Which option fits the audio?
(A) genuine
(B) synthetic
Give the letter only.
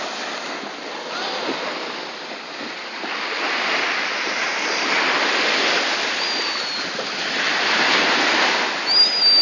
A